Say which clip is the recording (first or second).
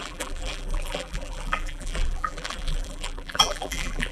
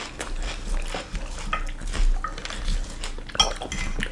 second